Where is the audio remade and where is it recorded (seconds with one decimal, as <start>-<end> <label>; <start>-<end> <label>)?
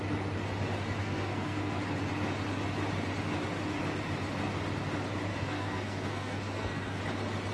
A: 0.0-1.0 recorded; 1.0-1.8 remade; 1.8-5.3 recorded; 5.3-7.0 remade; 7.0-7.5 recorded